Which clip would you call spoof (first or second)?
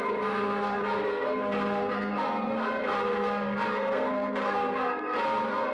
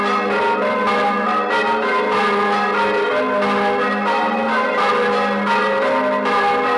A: first